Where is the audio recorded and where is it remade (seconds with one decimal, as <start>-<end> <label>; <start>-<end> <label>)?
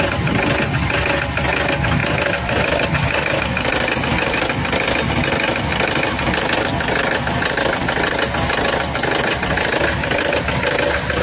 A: 0.0-11.2 recorded